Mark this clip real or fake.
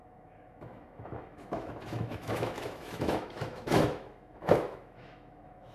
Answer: fake